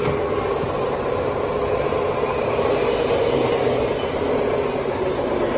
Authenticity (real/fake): real